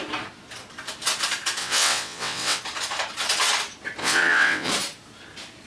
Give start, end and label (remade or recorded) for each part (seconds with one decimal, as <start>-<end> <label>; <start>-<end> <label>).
0.0-1.6 recorded; 1.6-2.6 remade; 2.6-4.0 recorded; 4.0-4.7 remade; 4.7-5.7 recorded